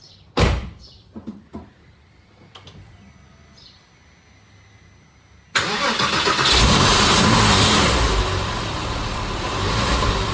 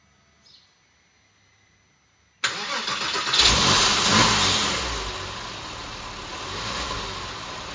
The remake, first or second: first